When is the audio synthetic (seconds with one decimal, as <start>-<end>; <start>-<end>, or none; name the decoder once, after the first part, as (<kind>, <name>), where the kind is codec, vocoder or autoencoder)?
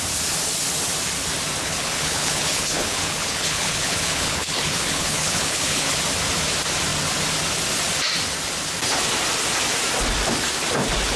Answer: 1.6-6.0 (codec, HILCodec)